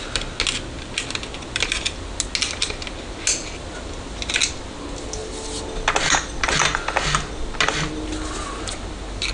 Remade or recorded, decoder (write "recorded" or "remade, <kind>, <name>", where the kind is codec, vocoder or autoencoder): recorded